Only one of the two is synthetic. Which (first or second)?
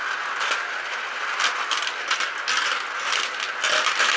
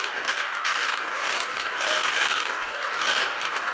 second